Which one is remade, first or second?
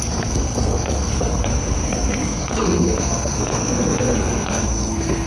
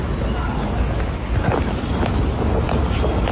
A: first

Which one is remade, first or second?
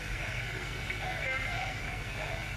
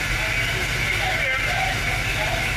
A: first